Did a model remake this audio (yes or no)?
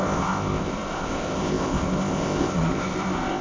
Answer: yes